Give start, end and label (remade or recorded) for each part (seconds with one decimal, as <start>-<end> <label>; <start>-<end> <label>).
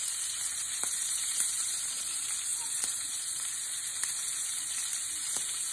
0.0-5.7 remade